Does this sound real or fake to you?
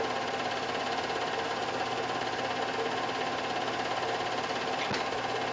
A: real